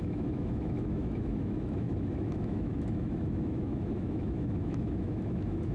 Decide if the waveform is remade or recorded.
remade